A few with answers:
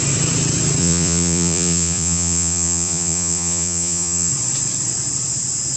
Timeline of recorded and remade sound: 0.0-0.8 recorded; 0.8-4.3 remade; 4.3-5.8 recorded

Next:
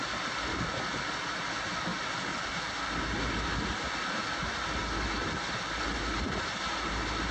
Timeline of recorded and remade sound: 0.0-7.3 recorded

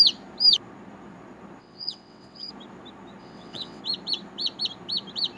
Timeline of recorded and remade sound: 0.0-1.6 recorded; 1.6-2.5 remade; 2.5-3.2 recorded; 3.2-3.8 remade; 3.8-5.4 recorded

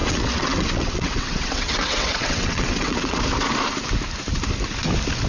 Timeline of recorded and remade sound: 0.0-3.2 remade; 3.2-5.3 recorded